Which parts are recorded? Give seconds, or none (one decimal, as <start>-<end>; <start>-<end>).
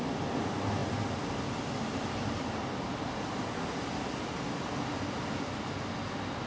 0.0-6.5